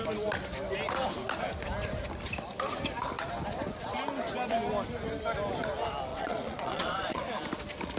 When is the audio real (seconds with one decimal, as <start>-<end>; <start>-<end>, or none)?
0.0-6.1; 7.2-8.0